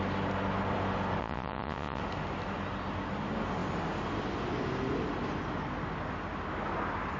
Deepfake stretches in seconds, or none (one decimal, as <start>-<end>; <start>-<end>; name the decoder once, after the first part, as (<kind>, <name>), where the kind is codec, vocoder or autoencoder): 1.2-2.0 (vocoder, Vocos)